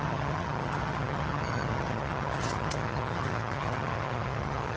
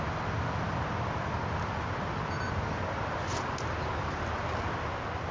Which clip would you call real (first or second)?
second